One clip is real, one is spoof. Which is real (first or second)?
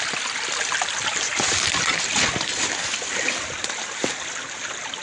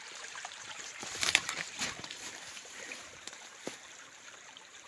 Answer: first